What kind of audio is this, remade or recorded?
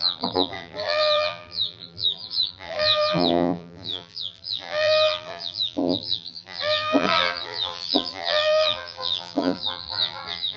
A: remade